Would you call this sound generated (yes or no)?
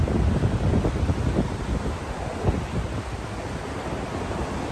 no